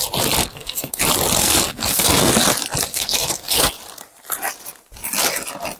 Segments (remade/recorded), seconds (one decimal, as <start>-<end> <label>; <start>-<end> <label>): 0.0-0.4 recorded; 0.4-1.0 remade; 1.0-1.4 recorded; 1.4-2.3 remade; 2.3-2.9 recorded; 2.9-3.6 remade; 3.6-5.8 recorded